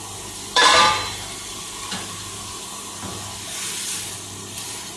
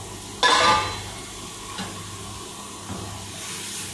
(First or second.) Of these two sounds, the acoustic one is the second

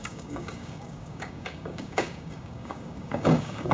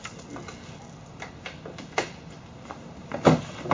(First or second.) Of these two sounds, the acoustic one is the second